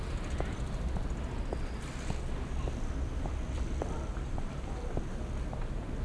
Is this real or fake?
real